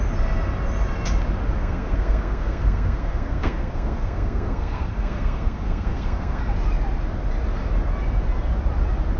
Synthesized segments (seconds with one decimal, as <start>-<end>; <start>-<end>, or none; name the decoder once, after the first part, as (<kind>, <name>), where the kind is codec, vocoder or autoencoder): 1.6-6.4 (codec, SNAC)